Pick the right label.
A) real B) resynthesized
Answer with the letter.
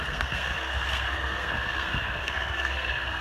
B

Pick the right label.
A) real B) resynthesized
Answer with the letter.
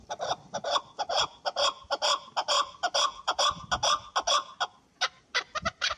A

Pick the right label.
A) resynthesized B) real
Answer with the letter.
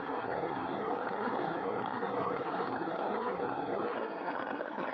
A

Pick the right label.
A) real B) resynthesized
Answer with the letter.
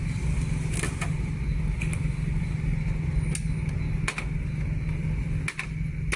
A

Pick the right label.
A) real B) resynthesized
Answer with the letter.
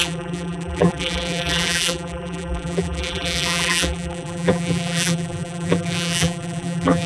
B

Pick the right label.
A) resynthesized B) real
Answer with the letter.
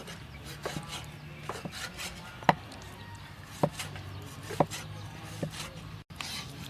B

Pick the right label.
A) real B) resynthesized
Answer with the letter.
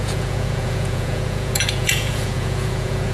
B